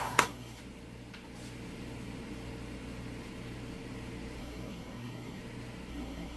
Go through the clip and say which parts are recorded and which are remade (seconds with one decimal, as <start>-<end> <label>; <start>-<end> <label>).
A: 0.0-0.6 remade; 0.6-4.4 recorded; 4.4-5.4 remade; 5.4-5.9 recorded; 5.9-6.4 remade